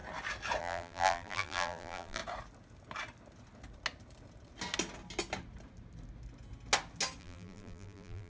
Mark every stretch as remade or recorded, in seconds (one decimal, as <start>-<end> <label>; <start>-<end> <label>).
0.0-0.6 recorded; 0.6-2.2 remade; 2.2-7.2 recorded; 7.2-8.3 remade